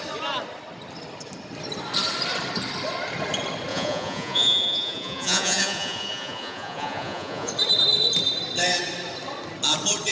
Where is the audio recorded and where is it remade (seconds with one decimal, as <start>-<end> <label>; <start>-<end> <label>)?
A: 0.0-3.7 recorded; 3.7-7.5 remade; 7.5-10.1 recorded